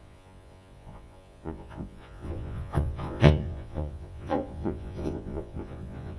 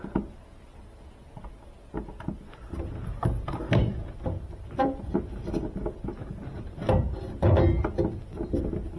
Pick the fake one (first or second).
first